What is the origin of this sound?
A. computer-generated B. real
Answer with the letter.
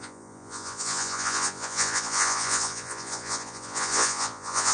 A